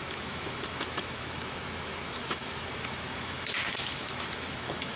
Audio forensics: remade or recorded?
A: remade